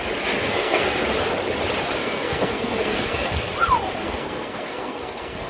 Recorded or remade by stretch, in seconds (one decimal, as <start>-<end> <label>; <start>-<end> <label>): 0.0-0.4 recorded; 0.4-1.0 remade; 1.0-2.0 recorded; 2.0-3.5 remade; 3.5-4.0 recorded; 4.0-5.5 remade